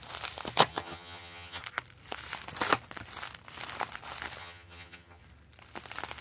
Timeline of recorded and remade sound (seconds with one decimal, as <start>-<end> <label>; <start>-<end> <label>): 0.0-0.7 recorded; 0.7-1.6 remade; 1.6-4.4 recorded; 4.4-5.2 remade; 5.2-6.2 recorded